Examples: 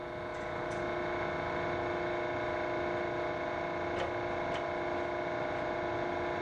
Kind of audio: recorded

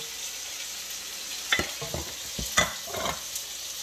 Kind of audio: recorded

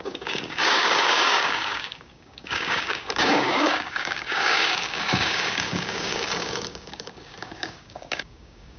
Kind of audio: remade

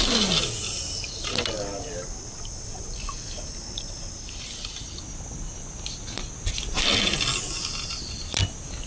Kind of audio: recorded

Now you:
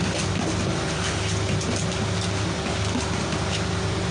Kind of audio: recorded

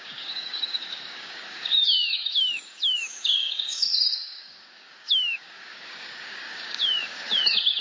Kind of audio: remade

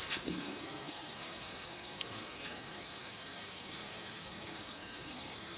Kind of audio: remade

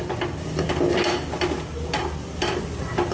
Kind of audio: recorded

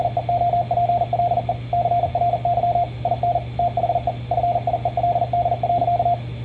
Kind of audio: recorded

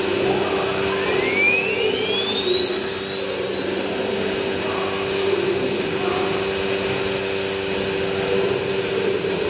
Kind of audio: recorded